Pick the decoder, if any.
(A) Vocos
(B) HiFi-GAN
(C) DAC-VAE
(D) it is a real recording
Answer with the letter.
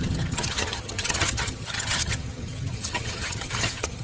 B